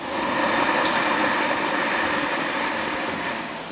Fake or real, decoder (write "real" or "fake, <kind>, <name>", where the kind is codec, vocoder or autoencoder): real